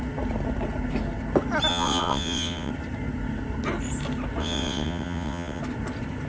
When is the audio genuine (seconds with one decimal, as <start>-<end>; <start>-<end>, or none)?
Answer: 0.0-1.7; 2.7-4.4; 5.6-6.3